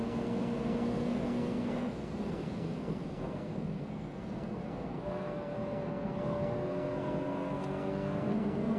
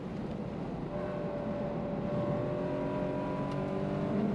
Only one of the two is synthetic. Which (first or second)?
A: first